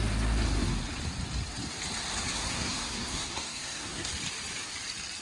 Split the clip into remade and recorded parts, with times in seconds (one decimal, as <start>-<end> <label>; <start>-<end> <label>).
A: 0.0-2.3 recorded; 2.3-4.1 remade; 4.1-5.2 recorded